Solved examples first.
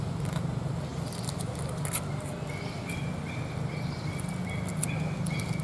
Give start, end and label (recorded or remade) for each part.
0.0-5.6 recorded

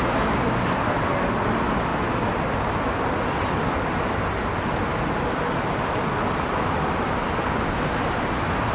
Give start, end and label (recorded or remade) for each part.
0.0-8.7 recorded